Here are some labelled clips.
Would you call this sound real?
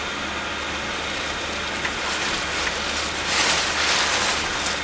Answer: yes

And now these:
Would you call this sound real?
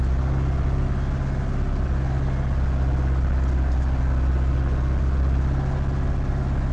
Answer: yes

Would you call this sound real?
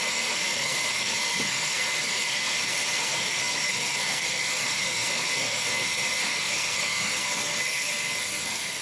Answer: no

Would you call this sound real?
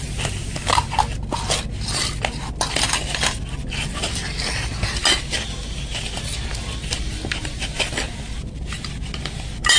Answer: yes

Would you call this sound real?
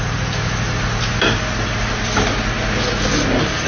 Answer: yes